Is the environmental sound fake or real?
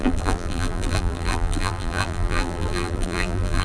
fake